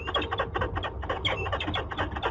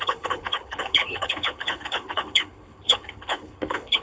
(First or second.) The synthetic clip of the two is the second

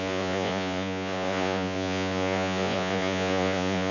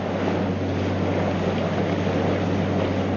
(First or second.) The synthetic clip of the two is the first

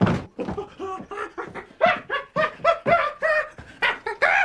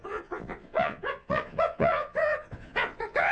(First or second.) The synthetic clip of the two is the second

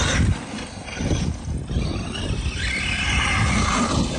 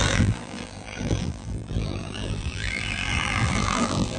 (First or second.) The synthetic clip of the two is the second